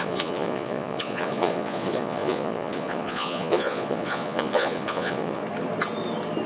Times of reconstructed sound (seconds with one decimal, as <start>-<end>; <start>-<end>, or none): 0.0-5.4